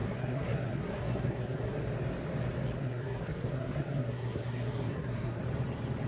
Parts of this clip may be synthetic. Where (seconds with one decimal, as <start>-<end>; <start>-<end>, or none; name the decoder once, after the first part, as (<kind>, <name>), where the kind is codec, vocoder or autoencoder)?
0.0-1.9 (codec, SNAC); 2.8-5.4

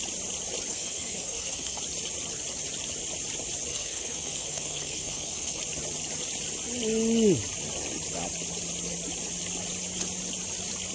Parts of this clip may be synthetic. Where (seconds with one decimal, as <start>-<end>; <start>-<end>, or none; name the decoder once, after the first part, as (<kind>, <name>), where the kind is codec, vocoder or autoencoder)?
0.7-1.8 (codec, SNAC); 3.7-5.6

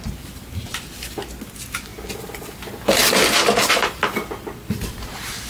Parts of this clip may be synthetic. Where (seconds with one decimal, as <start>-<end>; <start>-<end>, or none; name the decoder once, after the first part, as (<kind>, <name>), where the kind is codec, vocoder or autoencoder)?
none

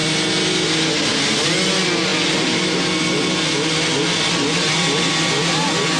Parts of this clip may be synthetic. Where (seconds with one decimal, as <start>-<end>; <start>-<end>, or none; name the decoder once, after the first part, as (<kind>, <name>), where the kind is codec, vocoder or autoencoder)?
none

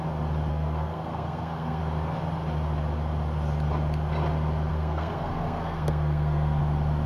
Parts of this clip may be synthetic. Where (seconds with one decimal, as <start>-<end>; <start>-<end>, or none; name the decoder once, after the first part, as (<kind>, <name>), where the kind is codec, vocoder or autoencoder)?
0.5-1.8 (codec, SNAC); 4.7-6.6